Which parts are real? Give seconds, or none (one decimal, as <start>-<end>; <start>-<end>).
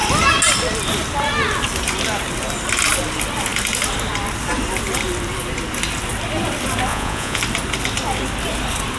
0.0-6.9; 7.4-9.0